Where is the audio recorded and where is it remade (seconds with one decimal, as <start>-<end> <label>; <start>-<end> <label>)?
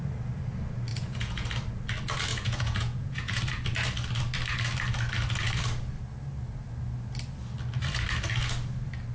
0.0-0.9 recorded; 0.9-1.5 remade; 1.5-2.3 recorded; 2.3-3.4 remade; 3.4-9.1 recorded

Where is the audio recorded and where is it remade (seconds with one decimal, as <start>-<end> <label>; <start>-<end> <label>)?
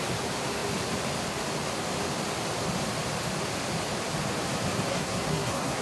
0.0-4.9 recorded; 4.9-5.8 remade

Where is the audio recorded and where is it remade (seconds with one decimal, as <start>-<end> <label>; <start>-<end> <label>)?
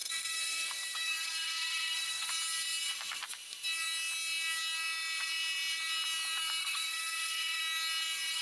0.0-2.3 remade; 2.3-6.6 recorded; 6.6-7.6 remade; 7.6-8.4 recorded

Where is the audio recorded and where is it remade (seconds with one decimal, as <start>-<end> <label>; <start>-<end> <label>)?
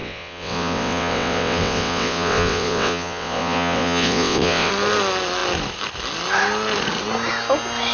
0.0-4.7 remade; 4.7-7.9 recorded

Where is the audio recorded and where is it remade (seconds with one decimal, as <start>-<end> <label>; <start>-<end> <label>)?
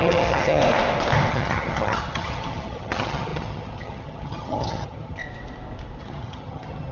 0.0-0.6 remade; 0.6-1.3 recorded; 1.3-5.2 remade; 5.2-6.0 recorded; 6.0-6.9 remade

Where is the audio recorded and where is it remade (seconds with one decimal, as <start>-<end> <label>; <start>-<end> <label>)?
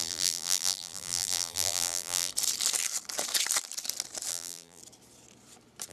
0.0-2.3 remade; 2.3-4.3 recorded; 4.3-4.8 remade; 4.8-5.9 recorded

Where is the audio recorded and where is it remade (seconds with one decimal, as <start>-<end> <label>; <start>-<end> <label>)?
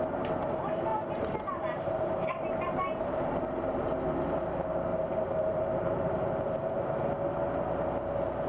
0.0-0.9 recorded; 0.9-3.8 remade; 3.8-4.9 recorded; 4.9-6.3 remade; 6.3-8.5 recorded